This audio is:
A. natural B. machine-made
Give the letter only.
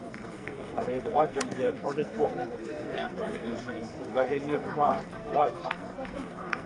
B